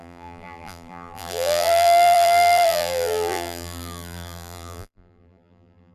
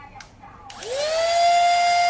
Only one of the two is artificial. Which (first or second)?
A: first